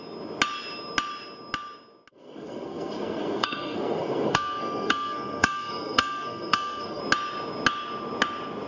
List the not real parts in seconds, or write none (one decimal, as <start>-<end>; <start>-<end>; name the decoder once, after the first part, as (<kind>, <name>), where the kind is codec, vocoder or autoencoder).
2.1-7.0 (codec, SNAC)